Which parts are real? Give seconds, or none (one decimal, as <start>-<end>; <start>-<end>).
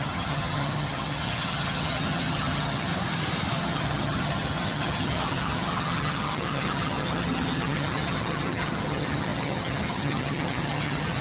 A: 2.9-3.6